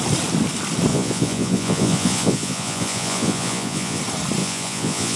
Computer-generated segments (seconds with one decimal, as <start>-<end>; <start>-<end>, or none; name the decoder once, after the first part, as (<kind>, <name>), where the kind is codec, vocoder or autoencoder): 0.9-4.0 (vocoder, Vocos); 4.4-5.2